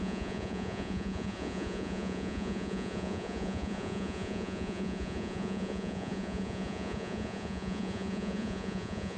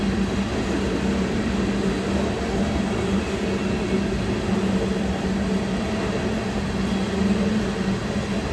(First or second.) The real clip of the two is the second